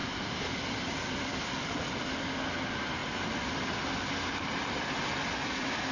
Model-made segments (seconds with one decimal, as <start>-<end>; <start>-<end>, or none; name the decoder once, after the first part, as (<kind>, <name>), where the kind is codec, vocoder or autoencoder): 0.0-1.3 (vocoder, BigVGAN v2)